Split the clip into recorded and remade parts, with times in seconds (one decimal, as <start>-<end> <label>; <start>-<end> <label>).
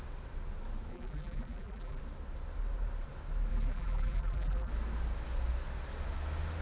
0.0-0.9 recorded; 0.9-2.0 remade; 2.0-3.5 recorded; 3.5-4.7 remade; 4.7-6.6 recorded